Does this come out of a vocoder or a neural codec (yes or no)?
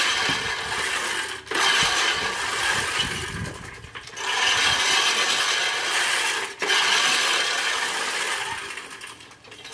no